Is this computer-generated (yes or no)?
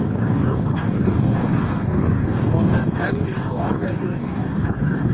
yes